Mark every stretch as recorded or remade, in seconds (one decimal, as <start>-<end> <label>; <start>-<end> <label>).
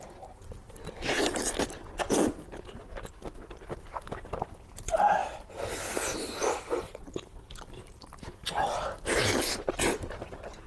0.0-10.7 recorded